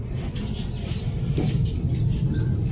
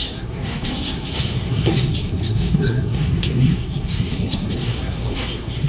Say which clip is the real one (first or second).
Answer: first